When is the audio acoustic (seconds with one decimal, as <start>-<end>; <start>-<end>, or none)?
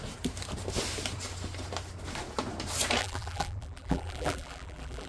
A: 0.0-3.0